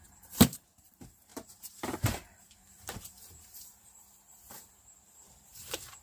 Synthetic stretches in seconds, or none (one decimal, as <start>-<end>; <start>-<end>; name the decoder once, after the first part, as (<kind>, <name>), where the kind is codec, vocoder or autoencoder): 0.0-6.0 (vocoder, BigVGAN v2)